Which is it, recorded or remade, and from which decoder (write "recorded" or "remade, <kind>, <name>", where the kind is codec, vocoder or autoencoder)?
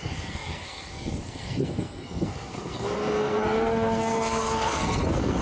remade, codec, SNAC